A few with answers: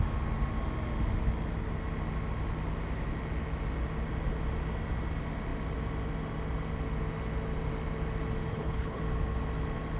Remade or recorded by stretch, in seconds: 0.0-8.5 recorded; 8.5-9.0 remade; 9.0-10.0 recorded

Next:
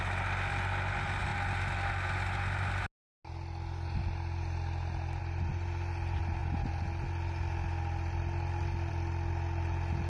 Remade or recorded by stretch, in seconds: 0.0-10.1 recorded